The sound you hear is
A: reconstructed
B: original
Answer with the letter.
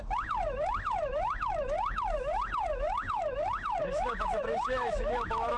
A